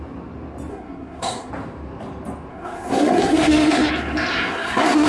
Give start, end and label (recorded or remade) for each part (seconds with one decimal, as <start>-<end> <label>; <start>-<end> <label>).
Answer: 0.0-0.7 recorded; 0.7-1.5 remade; 1.5-2.5 recorded; 2.5-3.9 remade; 3.9-4.3 recorded; 4.3-5.1 remade